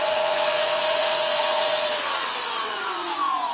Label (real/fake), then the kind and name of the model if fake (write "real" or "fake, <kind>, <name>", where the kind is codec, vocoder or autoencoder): fake, vocoder, WaveNeXt